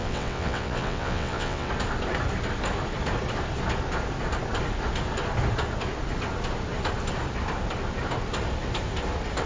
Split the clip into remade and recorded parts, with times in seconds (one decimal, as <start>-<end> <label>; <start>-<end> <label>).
0.0-1.7 remade; 1.7-9.5 recorded

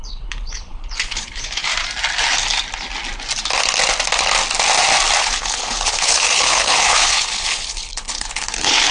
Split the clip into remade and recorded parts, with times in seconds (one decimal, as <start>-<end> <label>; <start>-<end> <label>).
0.0-1.7 remade; 1.7-5.2 recorded; 5.2-8.9 remade

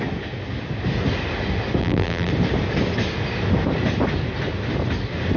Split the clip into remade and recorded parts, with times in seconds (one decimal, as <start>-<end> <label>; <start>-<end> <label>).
0.0-1.8 recorded; 1.8-2.3 remade; 2.3-5.4 recorded

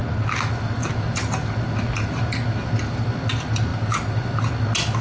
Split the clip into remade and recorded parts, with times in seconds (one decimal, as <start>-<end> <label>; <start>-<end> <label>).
0.0-5.0 recorded